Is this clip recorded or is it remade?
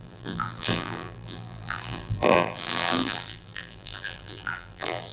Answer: remade